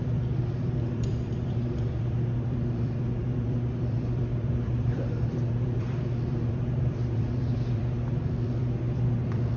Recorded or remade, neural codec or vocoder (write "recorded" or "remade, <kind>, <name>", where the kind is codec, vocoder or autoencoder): remade, vocoder, BigVGAN v2